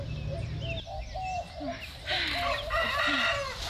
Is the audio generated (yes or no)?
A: no